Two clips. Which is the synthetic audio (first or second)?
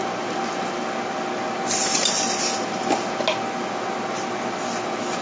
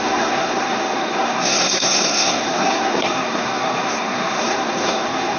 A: second